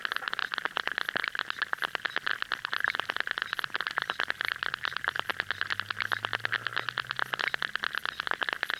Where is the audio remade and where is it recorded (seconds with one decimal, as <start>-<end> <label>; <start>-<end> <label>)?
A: 0.0-8.8 recorded